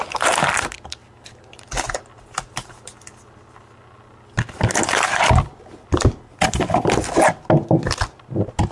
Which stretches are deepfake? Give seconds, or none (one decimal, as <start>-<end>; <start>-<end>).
none